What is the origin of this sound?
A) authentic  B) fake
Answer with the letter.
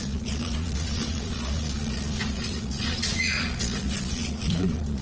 B